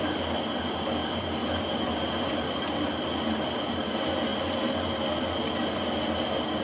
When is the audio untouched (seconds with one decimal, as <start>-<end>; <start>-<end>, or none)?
0.0-6.6